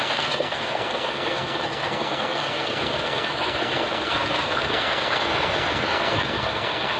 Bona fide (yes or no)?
no